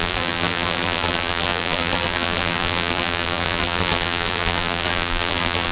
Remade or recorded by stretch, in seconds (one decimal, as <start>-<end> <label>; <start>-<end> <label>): 0.0-5.7 remade